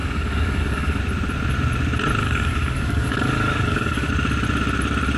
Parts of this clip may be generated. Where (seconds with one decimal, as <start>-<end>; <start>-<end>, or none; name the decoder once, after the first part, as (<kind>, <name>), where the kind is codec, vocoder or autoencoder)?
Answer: 0.0-1.0 (codec, DAC); 2.2-4.1